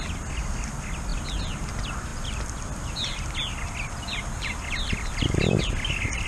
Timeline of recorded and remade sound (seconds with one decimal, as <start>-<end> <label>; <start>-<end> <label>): 0.0-6.3 recorded